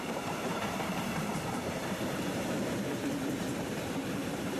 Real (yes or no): no